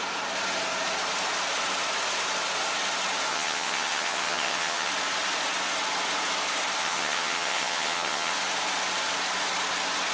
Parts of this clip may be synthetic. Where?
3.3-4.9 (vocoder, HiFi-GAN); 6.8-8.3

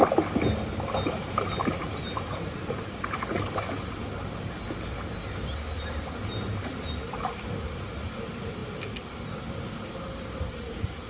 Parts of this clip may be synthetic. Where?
none

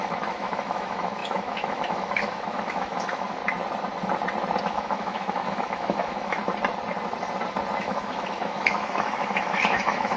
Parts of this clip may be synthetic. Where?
0.0-3.4 (autoencoder, DAC-VAE); 4.6-6.4; 7.8-10.2

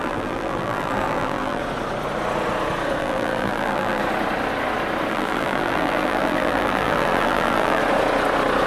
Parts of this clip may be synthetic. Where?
0.0-1.6 (vocoder, BigVGAN v2); 3.0-4.0; 5.1-7.8